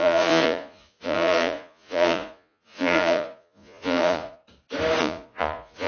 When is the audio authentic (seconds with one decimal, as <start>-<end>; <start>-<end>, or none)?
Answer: 4.4-5.0